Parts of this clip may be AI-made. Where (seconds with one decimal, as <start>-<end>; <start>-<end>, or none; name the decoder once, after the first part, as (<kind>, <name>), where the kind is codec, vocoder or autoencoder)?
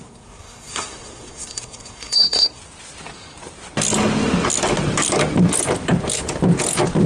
0.0-2.6 (codec, SNAC)